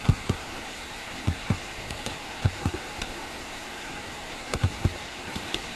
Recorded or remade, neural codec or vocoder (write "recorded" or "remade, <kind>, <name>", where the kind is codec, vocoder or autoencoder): remade, codec, SNAC